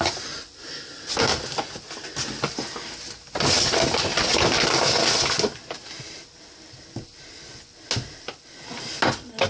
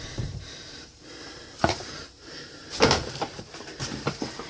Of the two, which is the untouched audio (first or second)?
first